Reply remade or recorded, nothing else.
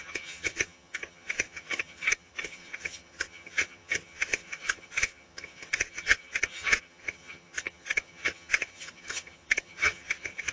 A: remade